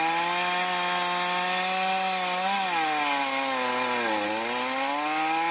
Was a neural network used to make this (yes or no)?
no